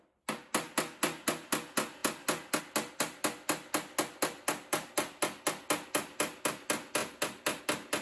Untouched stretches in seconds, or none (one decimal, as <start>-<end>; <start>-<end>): 0.0-8.0